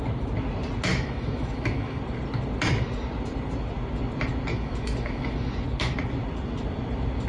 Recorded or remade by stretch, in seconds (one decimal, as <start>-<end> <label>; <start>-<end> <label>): 0.0-0.9 recorded; 0.9-2.0 remade; 2.0-4.5 recorded; 4.5-5.5 remade; 5.5-7.3 recorded